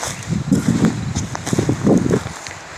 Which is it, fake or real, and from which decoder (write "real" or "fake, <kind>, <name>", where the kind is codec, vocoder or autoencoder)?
real